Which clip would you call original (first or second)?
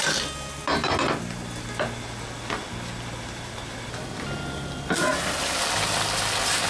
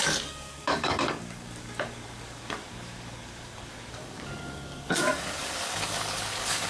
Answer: first